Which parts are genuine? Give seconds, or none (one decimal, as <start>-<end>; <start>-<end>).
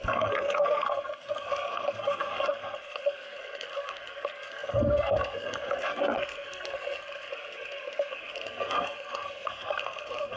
none